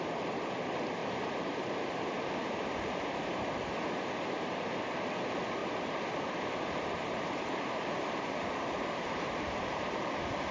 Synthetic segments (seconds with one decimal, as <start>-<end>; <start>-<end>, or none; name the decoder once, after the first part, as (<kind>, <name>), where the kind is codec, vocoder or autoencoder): 1.0-3.6 (vocoder, BigVGAN v2); 5.6-10.1